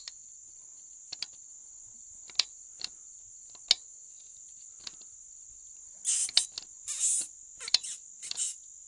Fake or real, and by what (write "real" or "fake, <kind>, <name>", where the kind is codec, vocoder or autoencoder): real